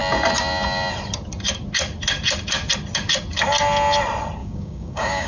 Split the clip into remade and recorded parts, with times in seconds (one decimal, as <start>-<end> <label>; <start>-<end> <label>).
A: 0.0-4.4 recorded; 4.4-5.3 remade